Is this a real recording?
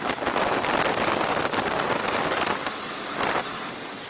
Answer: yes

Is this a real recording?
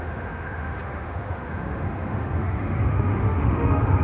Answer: no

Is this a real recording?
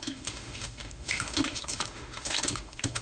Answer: no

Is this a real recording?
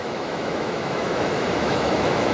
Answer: no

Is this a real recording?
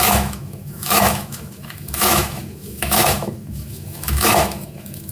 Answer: no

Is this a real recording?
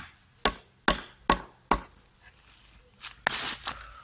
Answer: yes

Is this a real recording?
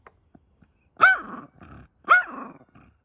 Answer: yes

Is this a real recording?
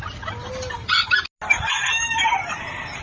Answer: yes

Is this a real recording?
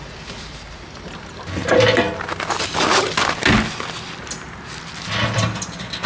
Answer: yes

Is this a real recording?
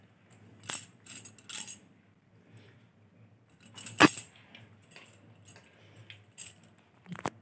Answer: yes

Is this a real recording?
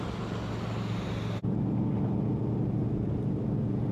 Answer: yes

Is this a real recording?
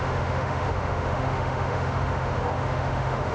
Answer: no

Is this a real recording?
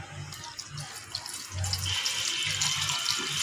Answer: yes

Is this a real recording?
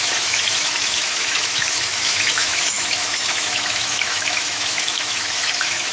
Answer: no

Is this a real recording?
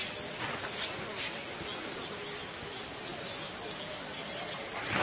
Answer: yes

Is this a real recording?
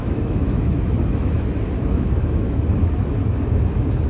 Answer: no